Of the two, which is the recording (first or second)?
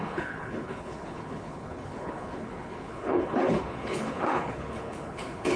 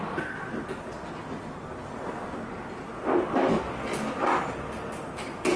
second